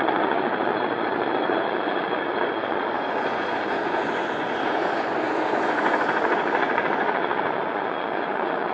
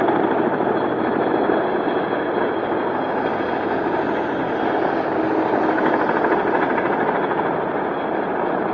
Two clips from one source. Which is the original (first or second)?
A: second